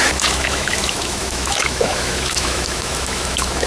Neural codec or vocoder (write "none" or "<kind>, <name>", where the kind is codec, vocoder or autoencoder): autoencoder, DAC-VAE